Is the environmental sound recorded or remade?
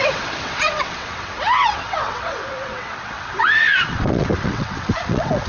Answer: remade